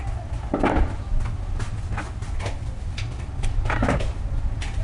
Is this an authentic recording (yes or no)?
yes